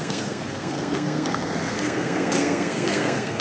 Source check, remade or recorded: remade